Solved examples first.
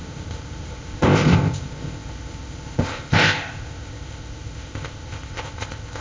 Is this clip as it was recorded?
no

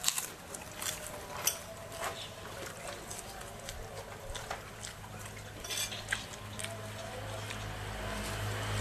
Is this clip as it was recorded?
yes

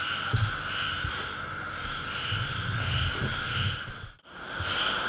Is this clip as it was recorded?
yes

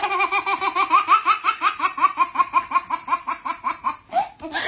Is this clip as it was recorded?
yes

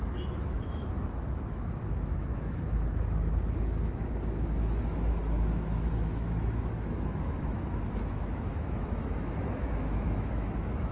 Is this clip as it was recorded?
no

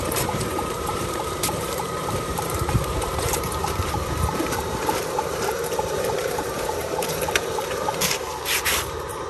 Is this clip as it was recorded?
no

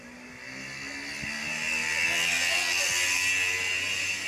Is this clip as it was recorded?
yes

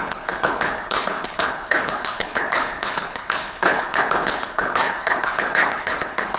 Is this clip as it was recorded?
no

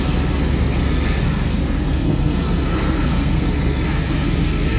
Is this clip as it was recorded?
no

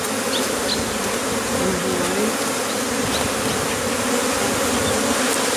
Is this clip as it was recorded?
yes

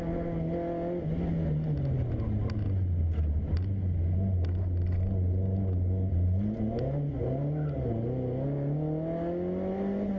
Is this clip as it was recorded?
yes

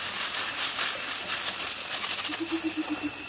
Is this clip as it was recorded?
yes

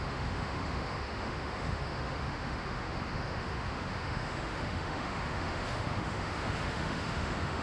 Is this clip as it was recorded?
no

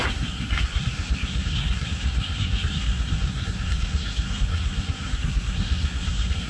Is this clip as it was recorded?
no